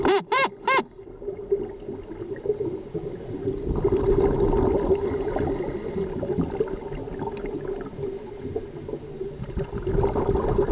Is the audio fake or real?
real